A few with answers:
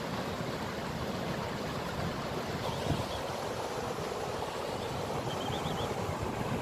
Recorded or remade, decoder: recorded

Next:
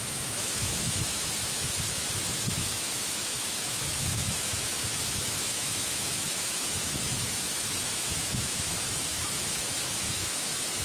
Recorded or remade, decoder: remade, autoencoder, DAC-VAE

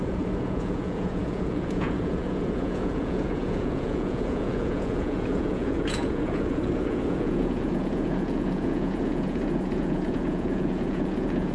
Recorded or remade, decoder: remade, vocoder, Vocos